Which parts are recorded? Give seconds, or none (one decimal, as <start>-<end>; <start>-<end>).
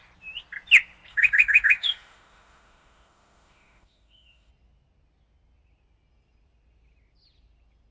0.0-1.1; 4.5-7.9